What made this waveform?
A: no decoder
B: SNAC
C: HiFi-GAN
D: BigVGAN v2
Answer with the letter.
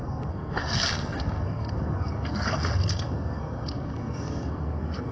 B